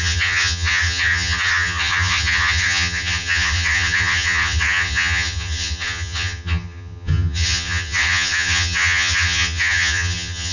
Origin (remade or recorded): remade